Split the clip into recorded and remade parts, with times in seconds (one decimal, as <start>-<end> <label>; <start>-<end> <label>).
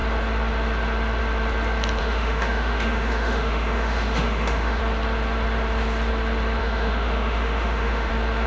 0.0-2.0 recorded; 2.0-4.8 remade; 4.8-6.6 recorded; 6.6-8.1 remade; 8.1-8.5 recorded